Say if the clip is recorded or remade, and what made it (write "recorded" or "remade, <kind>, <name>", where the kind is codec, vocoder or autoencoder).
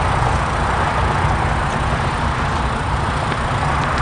remade, vocoder, BigVGAN v2